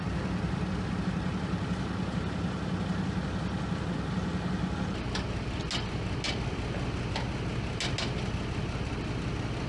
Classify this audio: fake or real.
real